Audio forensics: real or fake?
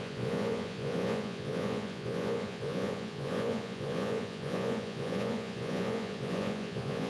fake